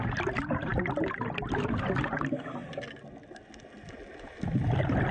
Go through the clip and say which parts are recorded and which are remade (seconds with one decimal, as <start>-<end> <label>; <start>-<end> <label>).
0.0-5.1 recorded